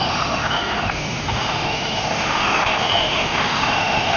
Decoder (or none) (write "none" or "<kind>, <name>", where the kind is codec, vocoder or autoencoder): autoencoder, DAC-VAE